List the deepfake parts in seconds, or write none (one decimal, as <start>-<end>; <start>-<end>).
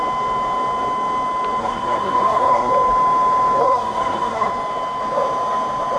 1.6-2.7; 3.6-4.5